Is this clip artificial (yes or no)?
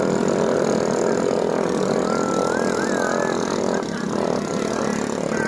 no